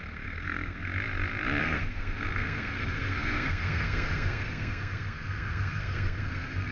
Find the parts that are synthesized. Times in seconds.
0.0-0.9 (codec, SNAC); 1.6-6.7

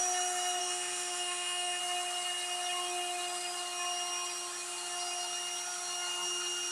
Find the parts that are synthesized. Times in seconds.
0.6-1.8 (autoencoder, DAC-VAE)

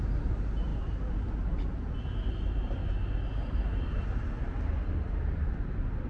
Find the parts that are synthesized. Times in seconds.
none